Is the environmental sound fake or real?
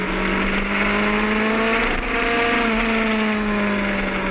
real